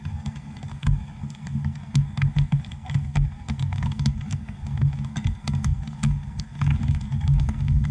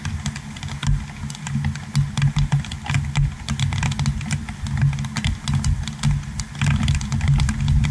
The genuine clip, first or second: second